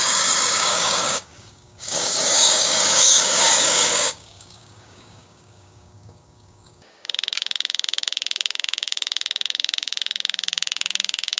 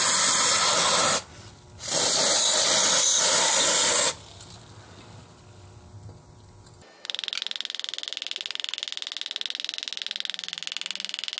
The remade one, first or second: first